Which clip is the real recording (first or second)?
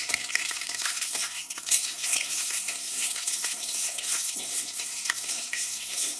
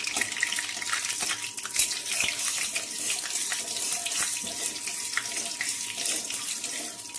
second